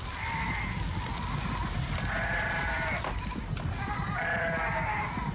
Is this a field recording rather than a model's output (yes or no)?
yes